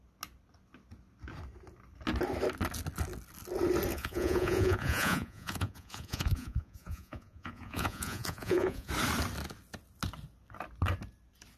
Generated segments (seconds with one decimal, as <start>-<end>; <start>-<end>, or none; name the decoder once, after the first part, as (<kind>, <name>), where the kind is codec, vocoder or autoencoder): 3.9-8.9 (vocoder, Vocos)